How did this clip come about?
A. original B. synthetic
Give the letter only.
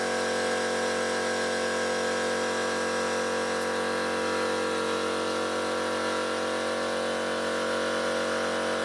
A